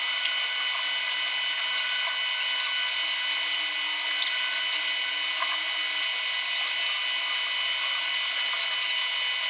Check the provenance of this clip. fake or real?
real